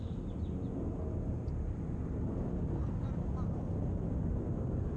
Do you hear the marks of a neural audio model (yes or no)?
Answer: no